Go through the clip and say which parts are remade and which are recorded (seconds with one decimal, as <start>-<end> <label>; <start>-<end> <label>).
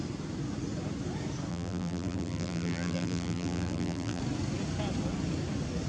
0.0-1.5 recorded; 1.5-4.2 remade; 4.2-5.9 recorded